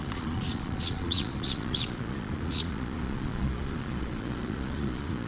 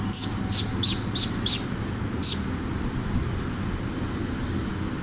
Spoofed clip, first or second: first